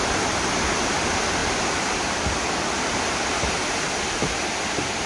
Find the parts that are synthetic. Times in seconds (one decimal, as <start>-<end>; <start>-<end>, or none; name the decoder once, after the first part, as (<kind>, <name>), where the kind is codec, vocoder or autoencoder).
none